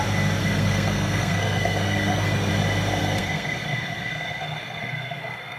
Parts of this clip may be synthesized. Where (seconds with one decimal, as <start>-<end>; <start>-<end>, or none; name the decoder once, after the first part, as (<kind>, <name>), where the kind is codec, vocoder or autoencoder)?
0.4-2.5 (codec, SNAC); 3.0-5.6